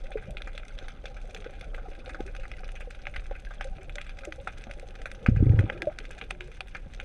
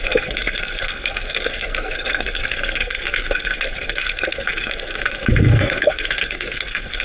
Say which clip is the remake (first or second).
second